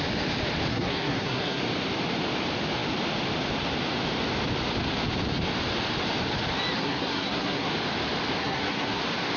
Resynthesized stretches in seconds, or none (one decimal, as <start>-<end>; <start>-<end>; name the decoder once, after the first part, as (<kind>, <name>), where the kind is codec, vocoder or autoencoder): 0.7-1.6 (codec, SNAC); 6.8-7.7; 8.4-9.0